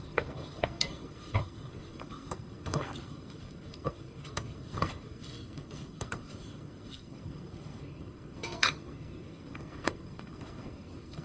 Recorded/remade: remade